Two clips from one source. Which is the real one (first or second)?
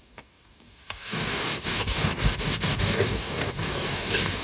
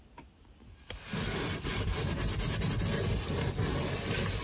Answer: second